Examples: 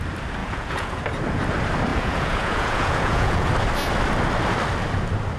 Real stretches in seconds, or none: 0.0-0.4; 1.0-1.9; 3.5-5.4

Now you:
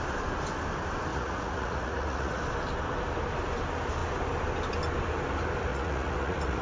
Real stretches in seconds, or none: 0.0-1.1; 2.4-5.7

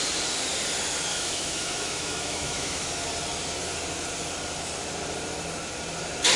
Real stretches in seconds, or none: 0.0-1.1; 2.9-6.4

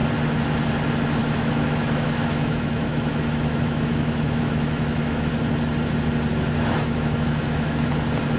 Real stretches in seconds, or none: 0.0-1.2; 5.3-6.3; 7.9-8.4

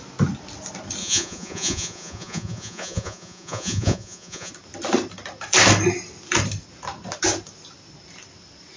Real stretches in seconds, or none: 0.0-1.0; 4.5-8.8

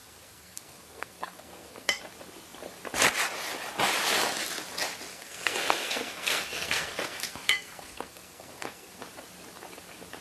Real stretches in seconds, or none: 2.0-5.1; 9.0-10.2

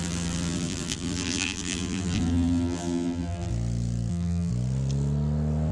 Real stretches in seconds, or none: 3.5-4.1; 4.5-5.7

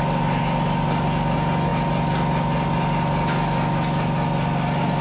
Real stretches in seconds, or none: 0.0-5.0